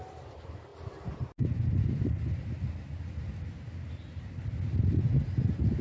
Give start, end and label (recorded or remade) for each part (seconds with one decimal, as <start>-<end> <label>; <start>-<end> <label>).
0.0-5.8 recorded